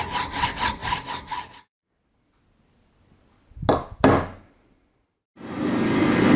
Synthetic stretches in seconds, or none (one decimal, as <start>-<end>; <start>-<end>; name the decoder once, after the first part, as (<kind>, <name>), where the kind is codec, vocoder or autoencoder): 0.8-3.1 (vocoder, BigVGAN v2)